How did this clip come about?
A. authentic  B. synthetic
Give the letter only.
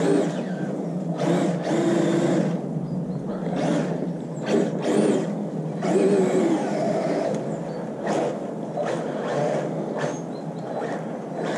A